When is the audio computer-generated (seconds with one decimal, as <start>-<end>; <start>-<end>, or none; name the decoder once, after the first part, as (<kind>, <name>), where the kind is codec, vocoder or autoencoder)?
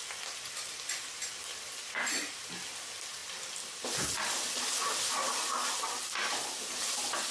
none